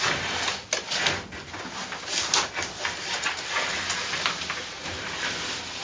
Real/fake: real